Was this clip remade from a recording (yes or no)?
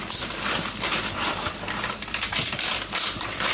yes